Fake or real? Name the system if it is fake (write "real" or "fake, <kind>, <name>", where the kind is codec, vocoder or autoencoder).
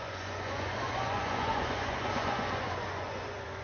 fake, vocoder, Vocos